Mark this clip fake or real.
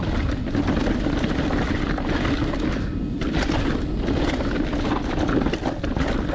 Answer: real